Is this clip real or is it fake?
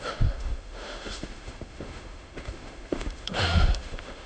fake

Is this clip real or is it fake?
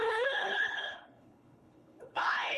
fake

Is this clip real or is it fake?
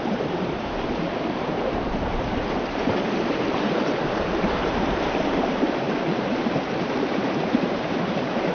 fake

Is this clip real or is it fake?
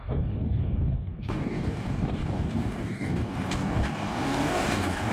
fake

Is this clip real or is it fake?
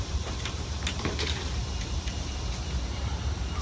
fake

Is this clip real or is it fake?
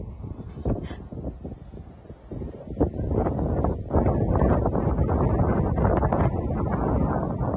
real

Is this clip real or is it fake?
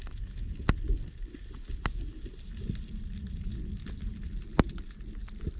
real